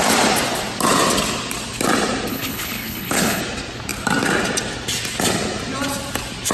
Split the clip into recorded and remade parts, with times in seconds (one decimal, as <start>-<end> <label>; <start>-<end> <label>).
0.0-2.3 recorded; 2.3-3.4 remade; 3.4-6.5 recorded